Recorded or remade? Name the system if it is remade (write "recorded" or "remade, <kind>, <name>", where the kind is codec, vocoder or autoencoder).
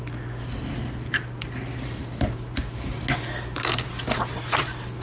recorded